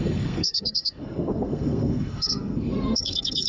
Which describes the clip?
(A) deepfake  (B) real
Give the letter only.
A